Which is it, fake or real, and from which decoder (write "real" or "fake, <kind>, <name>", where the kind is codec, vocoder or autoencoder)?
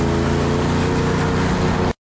real